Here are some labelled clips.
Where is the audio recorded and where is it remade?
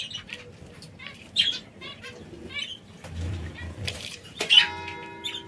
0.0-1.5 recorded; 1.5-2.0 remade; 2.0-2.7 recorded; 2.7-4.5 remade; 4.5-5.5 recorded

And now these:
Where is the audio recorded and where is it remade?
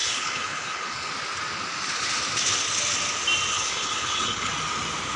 0.0-1.1 remade; 1.1-3.5 recorded; 3.5-4.5 remade; 4.5-5.2 recorded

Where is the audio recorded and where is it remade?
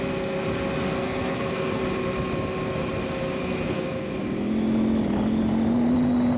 0.0-1.0 recorded; 1.0-1.8 remade; 1.8-3.4 recorded; 3.4-4.1 remade; 4.1-6.4 recorded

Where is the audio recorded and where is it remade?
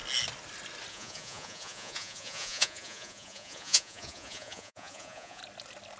0.0-0.9 recorded; 0.9-5.4 remade; 5.4-6.0 recorded